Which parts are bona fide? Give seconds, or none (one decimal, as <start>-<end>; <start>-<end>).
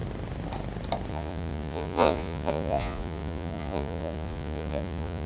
0.0-1.1